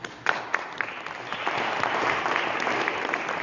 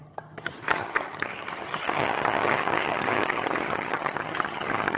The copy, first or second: second